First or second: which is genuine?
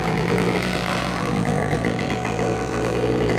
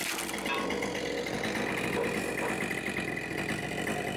second